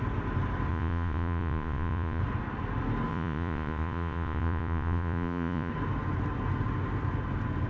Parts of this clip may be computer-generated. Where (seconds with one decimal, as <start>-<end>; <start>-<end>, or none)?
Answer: 0.7-2.2; 3.1-5.7